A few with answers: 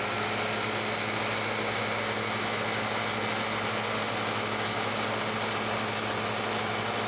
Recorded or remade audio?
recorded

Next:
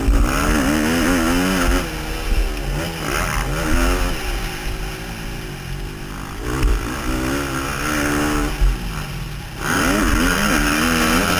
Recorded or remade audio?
recorded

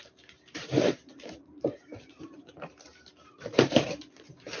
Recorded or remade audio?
remade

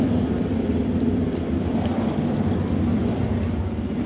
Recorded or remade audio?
recorded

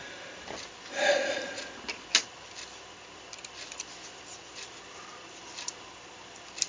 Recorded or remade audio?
recorded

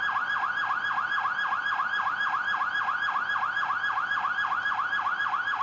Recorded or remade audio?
recorded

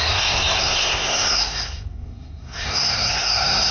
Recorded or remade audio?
remade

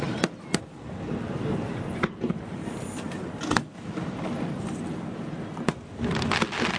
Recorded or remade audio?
recorded